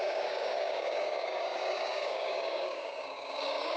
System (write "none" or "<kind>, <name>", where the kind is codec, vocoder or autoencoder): codec, DAC